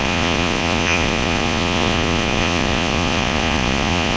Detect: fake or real fake